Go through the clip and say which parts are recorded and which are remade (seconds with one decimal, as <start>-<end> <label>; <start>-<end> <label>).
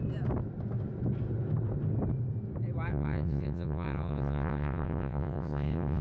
0.0-2.9 recorded; 2.9-6.0 remade